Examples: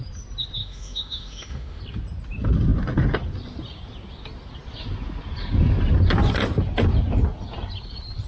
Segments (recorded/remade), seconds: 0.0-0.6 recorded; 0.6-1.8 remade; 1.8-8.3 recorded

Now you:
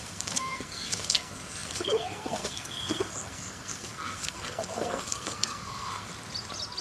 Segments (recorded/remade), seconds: 0.0-6.1 remade; 6.1-6.8 recorded

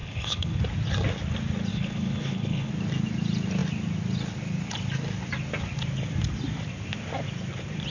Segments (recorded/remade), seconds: 0.0-0.6 remade; 0.6-1.7 recorded; 1.7-2.7 remade; 2.7-7.9 recorded

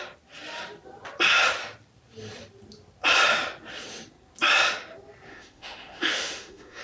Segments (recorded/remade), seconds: 0.0-5.3 recorded; 5.3-6.8 remade

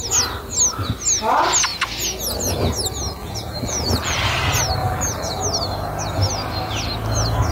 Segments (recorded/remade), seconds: 0.0-3.2 recorded; 3.2-3.9 remade; 3.9-4.8 recorded; 4.8-5.4 remade; 5.4-7.5 recorded

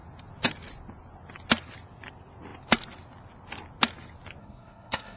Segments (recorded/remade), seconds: 0.0-4.4 recorded; 4.4-5.2 remade